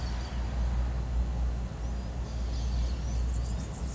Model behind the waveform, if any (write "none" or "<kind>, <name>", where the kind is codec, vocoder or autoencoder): none